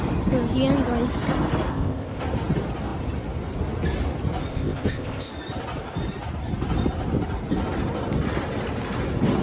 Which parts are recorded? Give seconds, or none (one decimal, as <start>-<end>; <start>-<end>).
0.0-1.7; 2.2-4.5; 5.3-9.4